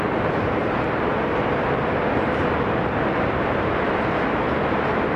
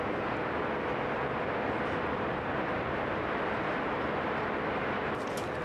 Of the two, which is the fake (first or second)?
first